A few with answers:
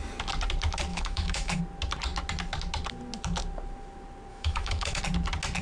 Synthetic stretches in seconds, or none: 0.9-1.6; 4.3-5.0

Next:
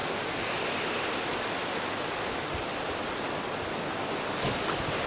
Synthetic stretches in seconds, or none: none

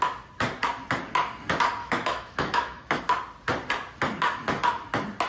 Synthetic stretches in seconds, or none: 1.8-3.0

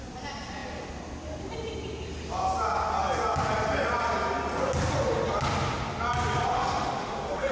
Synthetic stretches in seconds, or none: 6.5-7.5

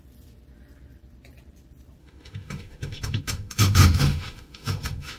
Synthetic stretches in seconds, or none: 2.0-5.2

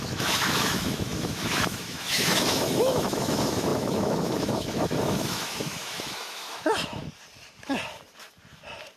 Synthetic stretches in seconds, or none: 0.0-7.0

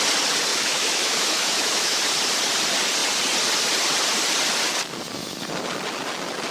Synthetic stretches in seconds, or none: 0.5-2.1

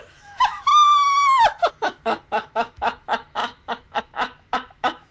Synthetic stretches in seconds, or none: 0.0-0.7; 1.7-5.1